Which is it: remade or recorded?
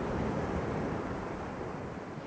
recorded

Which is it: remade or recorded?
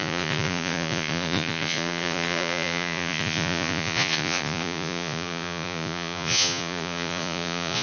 remade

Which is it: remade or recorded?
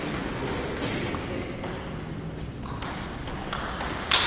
recorded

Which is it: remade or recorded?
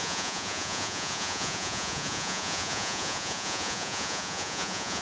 remade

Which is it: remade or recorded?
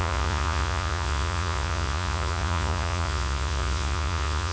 remade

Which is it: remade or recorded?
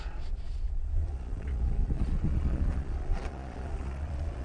remade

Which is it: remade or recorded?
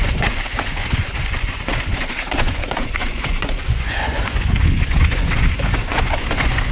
remade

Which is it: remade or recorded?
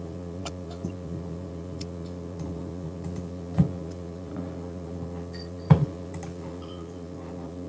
remade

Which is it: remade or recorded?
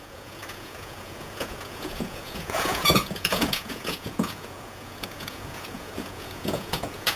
remade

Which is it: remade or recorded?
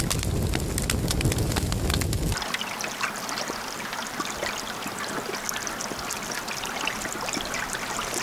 recorded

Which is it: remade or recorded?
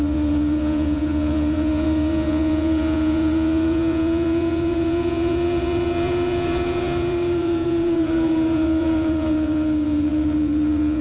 remade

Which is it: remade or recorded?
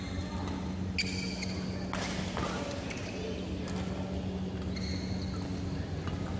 recorded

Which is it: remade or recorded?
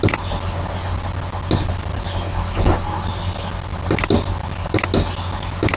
recorded